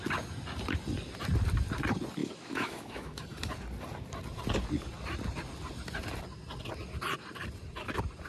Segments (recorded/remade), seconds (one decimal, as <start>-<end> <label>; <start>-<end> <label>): 0.0-2.2 recorded; 2.2-3.2 remade; 3.2-8.3 recorded